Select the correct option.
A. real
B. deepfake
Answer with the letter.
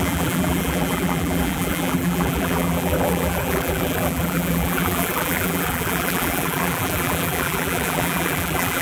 B